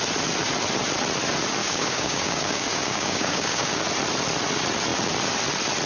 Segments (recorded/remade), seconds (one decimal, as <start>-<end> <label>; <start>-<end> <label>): 0.0-1.6 recorded; 1.6-3.8 remade; 3.8-5.9 recorded